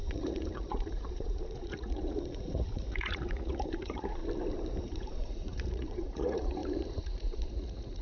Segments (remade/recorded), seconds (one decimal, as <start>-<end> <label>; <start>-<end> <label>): 0.0-4.2 remade; 4.2-4.8 recorded; 4.8-8.0 remade